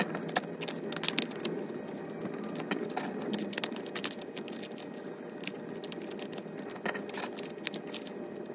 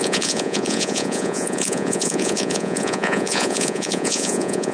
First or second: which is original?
first